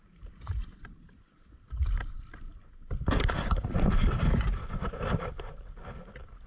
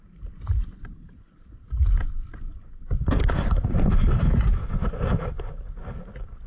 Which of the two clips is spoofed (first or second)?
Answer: first